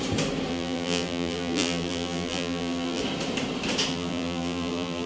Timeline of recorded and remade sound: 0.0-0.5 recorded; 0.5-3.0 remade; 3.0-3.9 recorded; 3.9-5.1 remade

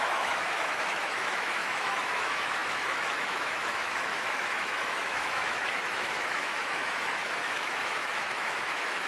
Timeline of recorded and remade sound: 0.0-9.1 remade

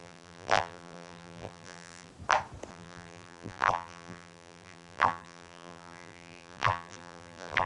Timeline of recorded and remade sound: 0.0-2.1 remade; 2.1-2.7 recorded; 2.7-7.7 remade

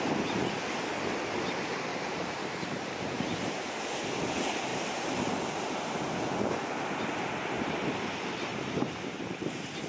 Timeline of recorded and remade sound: 0.0-1.9 recorded; 1.9-4.1 remade; 4.1-4.7 recorded; 4.7-5.3 remade; 5.3-8.5 recorded; 8.5-9.0 remade; 9.0-9.9 recorded

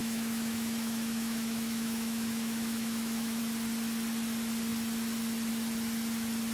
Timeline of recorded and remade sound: 0.0-3.4 remade; 3.4-6.5 recorded